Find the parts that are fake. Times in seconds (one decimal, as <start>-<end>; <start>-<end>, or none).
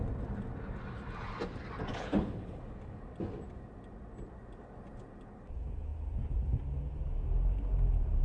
1.9-2.6